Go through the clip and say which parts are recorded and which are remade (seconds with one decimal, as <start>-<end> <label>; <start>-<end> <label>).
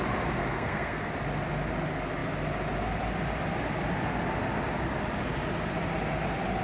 0.0-0.4 recorded; 0.4-1.1 remade; 1.1-6.6 recorded